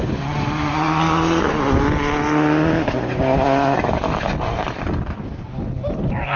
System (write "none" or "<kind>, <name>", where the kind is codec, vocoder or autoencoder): none